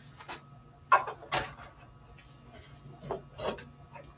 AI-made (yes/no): no